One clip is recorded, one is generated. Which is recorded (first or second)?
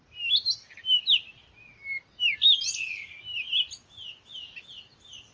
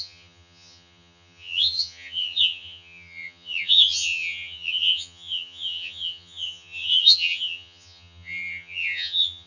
first